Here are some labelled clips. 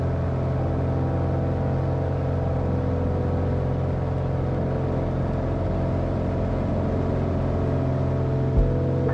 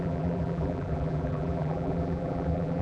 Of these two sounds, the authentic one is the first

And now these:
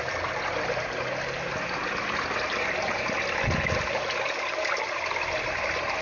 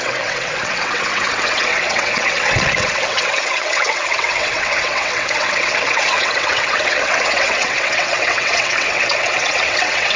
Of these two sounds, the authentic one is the first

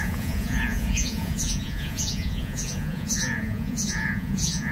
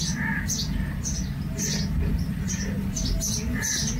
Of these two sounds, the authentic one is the second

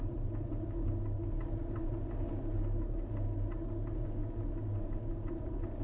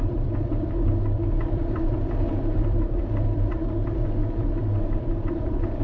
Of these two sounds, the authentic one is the first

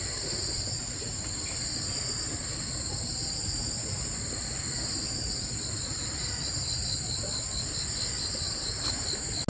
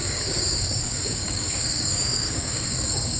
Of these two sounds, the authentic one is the first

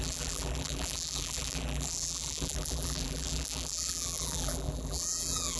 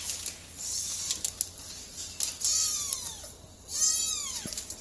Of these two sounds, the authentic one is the second